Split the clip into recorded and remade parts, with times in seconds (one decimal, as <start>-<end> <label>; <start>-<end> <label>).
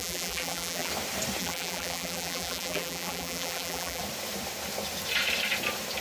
0.0-0.9 remade; 0.9-1.4 recorded; 1.4-4.0 remade; 4.0-6.0 recorded